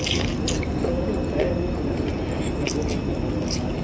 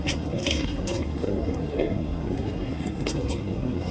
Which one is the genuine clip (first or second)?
first